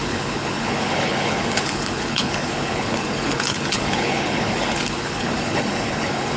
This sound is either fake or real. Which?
fake